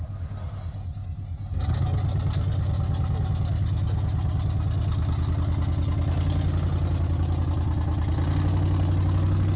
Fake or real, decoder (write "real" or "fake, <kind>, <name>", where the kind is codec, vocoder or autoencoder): real